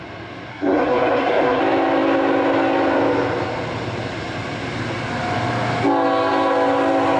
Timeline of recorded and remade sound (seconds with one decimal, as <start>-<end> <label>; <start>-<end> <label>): 0.0-0.5 recorded; 0.5-1.6 remade; 1.6-7.2 recorded